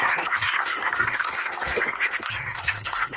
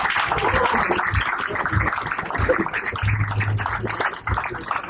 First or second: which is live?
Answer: second